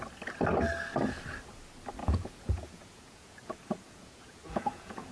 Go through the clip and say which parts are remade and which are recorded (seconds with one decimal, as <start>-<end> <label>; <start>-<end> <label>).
0.0-2.0 recorded; 2.0-5.1 remade